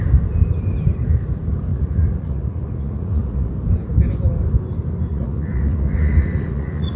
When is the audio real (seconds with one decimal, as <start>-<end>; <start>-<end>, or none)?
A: 0.0-1.7; 3.5-5.1